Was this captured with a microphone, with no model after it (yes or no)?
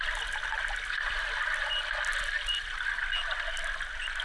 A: yes